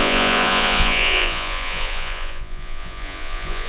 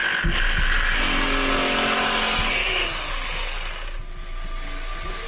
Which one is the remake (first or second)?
first